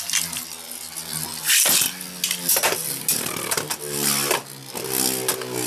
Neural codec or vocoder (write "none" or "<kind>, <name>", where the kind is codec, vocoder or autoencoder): none